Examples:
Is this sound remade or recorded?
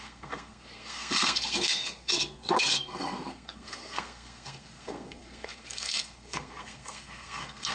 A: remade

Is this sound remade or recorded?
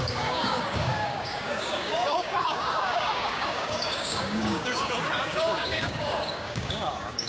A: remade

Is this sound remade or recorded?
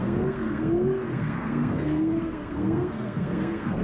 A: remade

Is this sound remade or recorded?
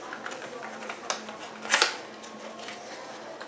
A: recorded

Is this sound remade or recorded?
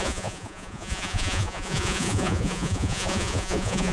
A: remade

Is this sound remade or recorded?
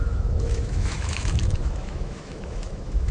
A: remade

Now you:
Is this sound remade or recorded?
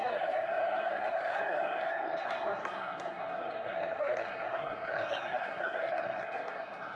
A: remade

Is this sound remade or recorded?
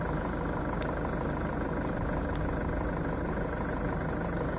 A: recorded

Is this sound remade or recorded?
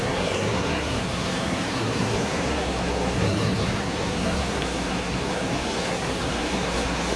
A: remade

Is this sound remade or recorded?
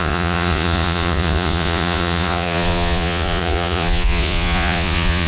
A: remade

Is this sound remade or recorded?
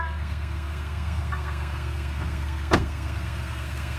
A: remade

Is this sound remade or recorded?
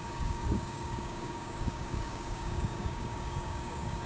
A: remade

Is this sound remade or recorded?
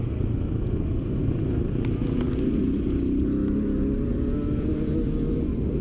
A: recorded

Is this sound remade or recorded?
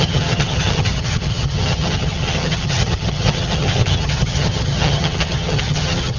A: remade